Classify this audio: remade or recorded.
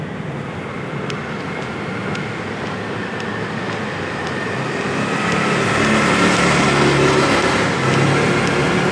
recorded